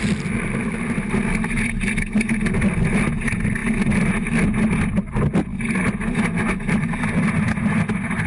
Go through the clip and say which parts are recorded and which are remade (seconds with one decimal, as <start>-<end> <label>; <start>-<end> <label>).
0.0-8.3 recorded